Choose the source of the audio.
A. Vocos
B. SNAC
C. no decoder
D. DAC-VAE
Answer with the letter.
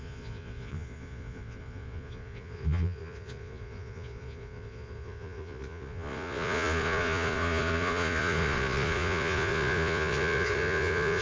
A